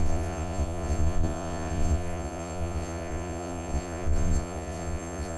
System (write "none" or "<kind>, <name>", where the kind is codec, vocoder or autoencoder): vocoder, Vocos